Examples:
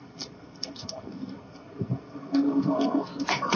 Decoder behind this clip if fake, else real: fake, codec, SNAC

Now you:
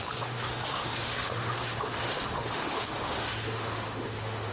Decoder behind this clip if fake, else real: fake, autoencoder, DAC-VAE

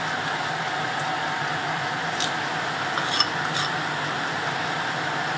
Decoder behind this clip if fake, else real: real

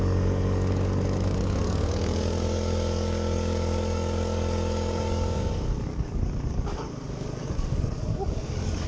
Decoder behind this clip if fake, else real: fake, codec, DAC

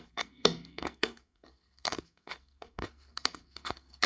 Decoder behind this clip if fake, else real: fake, codec, SNAC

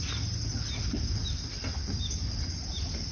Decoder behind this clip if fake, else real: real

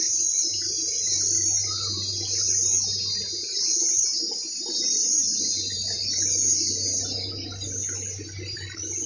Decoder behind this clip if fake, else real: real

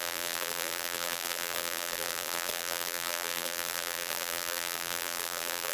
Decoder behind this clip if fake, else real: fake, vocoder, BigVGAN v2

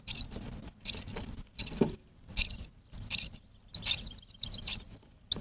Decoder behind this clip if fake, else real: real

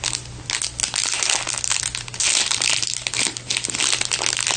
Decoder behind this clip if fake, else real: real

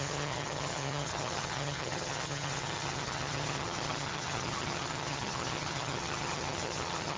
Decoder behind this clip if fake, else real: fake, vocoder, HiFi-GAN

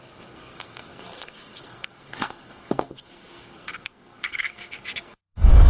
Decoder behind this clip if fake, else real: fake, codec, SNAC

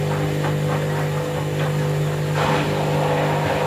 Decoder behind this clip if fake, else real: real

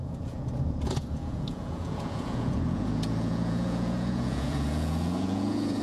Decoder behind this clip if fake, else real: fake, vocoder, Vocos